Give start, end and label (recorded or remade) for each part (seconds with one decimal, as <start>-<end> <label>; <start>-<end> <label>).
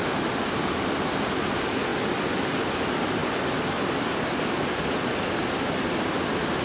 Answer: 0.0-6.6 recorded